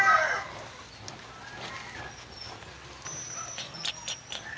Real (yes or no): yes